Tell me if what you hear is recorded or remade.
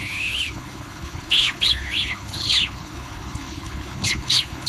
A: remade